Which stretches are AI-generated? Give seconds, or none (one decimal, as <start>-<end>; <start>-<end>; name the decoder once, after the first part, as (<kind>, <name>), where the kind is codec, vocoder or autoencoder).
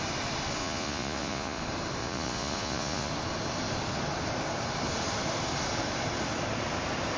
0.6-1.6 (vocoder, Vocos); 2.0-3.1